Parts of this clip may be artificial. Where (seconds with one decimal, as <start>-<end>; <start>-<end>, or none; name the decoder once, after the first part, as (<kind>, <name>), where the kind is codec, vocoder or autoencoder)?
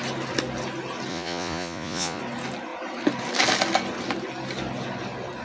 1.1-2.2 (vocoder, Vocos)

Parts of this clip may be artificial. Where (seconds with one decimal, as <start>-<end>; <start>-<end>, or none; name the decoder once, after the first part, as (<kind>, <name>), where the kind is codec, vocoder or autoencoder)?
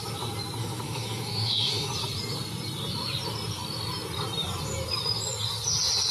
0.6-1.9 (autoencoder, DAC-VAE)